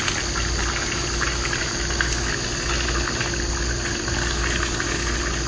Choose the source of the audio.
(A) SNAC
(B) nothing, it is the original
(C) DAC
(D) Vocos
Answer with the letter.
B